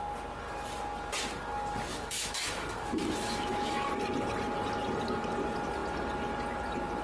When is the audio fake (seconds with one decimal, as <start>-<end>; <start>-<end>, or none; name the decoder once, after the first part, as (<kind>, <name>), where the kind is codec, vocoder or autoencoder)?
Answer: 1.9-3.9 (autoencoder, DAC-VAE)